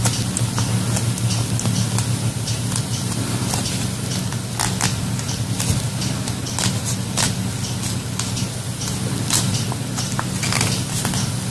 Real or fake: real